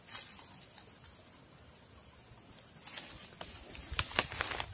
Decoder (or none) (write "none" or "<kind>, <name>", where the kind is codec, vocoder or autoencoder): none